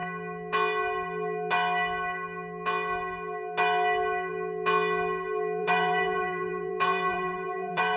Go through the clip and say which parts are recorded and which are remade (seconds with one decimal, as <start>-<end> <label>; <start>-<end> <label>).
0.0-5.6 recorded; 5.6-8.0 remade